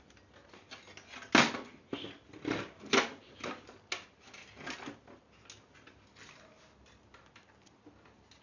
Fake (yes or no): no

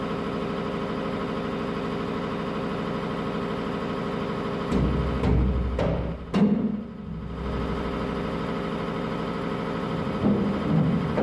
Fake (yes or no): no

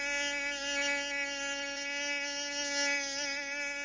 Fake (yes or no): no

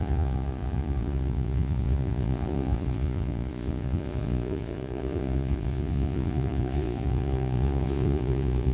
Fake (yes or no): yes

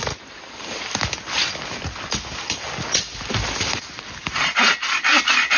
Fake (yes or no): no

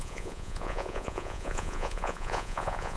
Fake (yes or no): yes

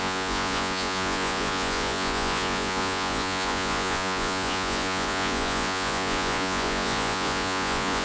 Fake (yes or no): yes